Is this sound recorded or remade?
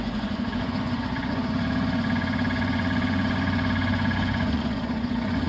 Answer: remade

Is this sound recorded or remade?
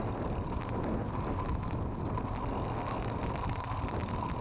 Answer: recorded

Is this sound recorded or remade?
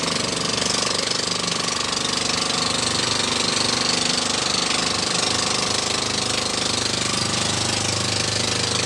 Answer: recorded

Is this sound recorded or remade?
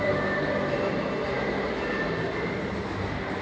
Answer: recorded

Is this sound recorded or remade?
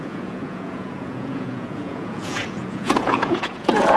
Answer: remade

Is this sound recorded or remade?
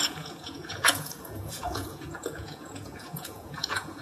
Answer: remade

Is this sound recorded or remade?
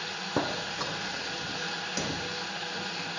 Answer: recorded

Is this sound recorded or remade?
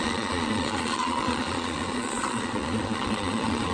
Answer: remade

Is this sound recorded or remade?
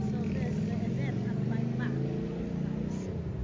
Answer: recorded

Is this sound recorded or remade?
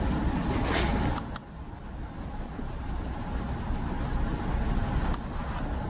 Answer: recorded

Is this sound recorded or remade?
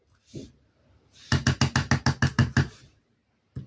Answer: recorded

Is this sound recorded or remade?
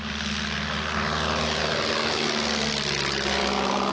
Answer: recorded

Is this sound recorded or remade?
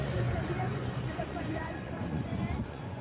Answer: remade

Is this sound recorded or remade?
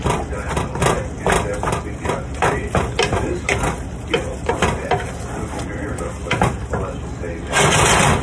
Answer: recorded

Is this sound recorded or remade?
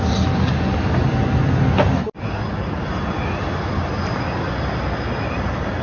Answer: recorded